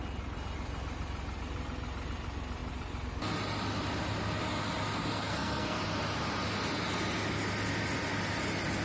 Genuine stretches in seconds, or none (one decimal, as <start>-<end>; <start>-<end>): 0.0-5.0; 5.8-8.8